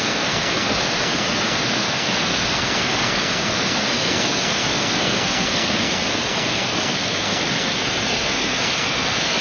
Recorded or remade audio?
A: remade